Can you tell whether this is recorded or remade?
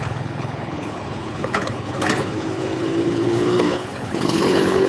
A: remade